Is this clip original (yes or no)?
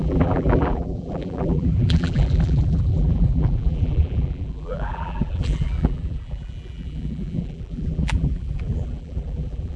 no